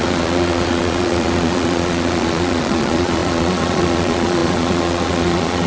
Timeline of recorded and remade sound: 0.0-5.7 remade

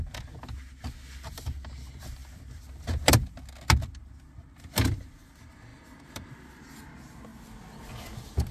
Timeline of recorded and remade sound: 0.0-5.7 recorded; 5.7-6.3 remade; 6.3-8.5 recorded

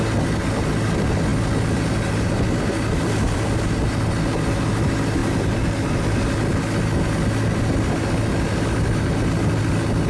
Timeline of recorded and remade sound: 0.0-10.1 recorded

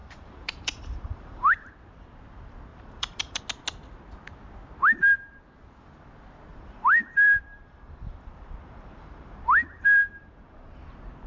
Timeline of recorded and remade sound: 0.0-1.7 remade; 1.7-2.7 recorded; 2.7-3.4 remade; 3.4-6.5 recorded; 6.5-10.8 remade; 10.8-11.3 recorded

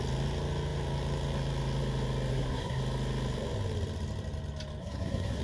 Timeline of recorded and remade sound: 0.0-2.3 recorded; 2.3-2.8 remade; 2.8-4.8 recorded; 4.8-5.4 remade

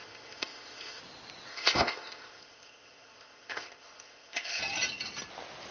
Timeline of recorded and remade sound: 0.0-1.0 remade; 1.0-1.5 recorded; 1.5-4.6 remade; 4.6-5.7 recorded

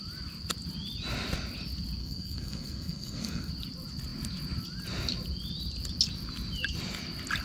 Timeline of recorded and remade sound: 0.0-2.0 recorded; 2.0-3.5 remade; 3.5-7.4 recorded